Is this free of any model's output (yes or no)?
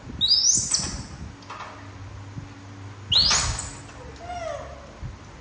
yes